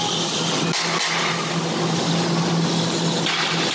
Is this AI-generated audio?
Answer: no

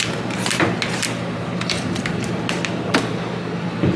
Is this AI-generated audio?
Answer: no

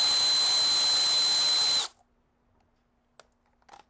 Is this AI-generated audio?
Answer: no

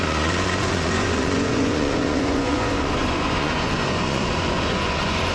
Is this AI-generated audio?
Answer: yes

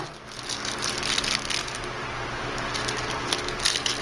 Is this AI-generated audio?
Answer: no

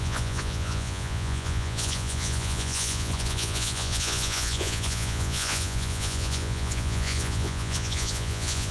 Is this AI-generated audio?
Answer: yes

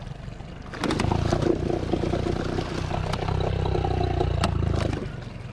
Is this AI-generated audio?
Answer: no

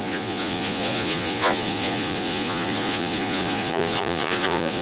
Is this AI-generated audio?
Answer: yes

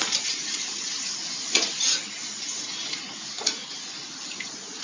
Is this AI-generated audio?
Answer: yes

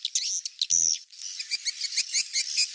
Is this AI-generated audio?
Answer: no